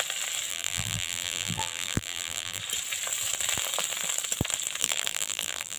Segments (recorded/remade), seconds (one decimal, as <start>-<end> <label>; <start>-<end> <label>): 0.0-0.5 recorded; 0.5-2.6 remade; 2.6-4.8 recorded; 4.8-5.8 remade